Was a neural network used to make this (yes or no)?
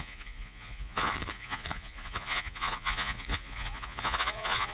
yes